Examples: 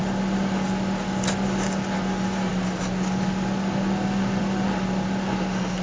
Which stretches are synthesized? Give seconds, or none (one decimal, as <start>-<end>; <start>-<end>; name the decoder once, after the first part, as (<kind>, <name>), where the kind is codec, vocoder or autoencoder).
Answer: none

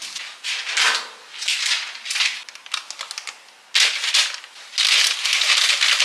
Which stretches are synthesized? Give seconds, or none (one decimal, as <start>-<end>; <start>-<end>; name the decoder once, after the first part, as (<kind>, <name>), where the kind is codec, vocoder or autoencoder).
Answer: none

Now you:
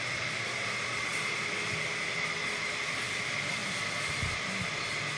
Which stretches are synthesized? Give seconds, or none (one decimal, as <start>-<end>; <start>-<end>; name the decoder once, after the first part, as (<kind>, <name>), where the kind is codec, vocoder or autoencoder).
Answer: none